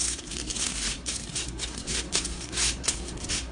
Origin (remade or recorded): remade